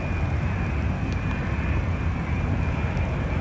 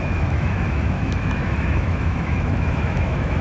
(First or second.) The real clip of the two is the first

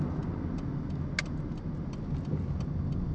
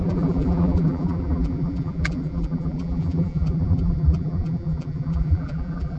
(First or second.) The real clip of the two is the first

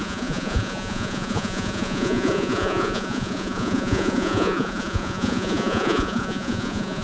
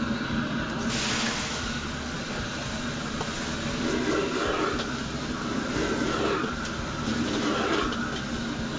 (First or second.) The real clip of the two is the second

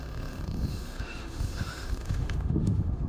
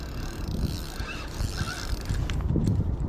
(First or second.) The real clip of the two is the second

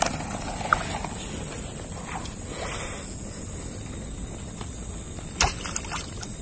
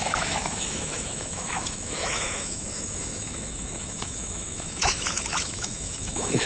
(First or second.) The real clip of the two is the first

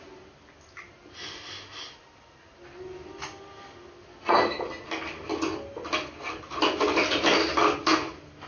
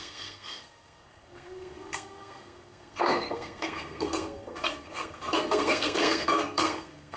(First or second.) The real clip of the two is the first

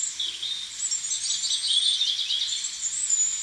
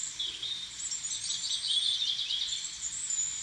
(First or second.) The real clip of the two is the first